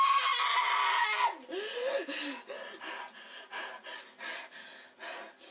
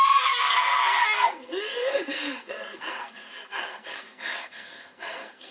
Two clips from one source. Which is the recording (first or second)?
first